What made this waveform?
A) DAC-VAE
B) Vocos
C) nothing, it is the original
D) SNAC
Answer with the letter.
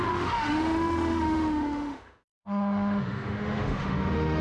A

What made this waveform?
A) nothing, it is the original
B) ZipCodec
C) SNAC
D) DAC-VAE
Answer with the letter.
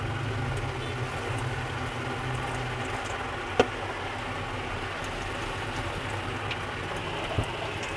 A